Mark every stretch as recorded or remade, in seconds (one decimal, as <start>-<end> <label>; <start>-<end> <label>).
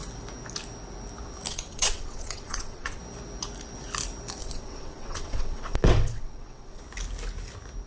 0.0-1.5 recorded; 1.5-3.0 remade; 3.0-4.4 recorded; 4.4-6.8 remade; 6.8-7.9 recorded